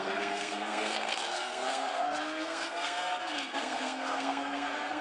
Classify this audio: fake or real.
fake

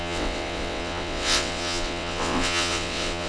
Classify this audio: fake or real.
fake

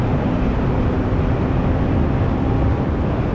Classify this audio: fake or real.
real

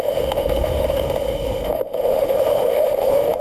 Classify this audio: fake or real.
fake